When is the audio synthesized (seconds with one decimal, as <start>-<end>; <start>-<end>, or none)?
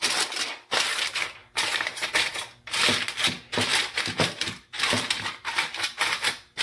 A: 1.4-2.1; 3.7-6.6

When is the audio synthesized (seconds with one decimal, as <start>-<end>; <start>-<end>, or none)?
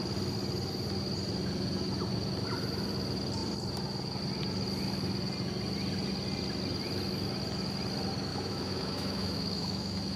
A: 8.3-10.2